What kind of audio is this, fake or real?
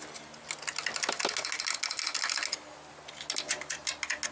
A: real